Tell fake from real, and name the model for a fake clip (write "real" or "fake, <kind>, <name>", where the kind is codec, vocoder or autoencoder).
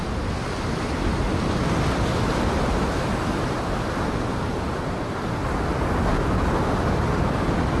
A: real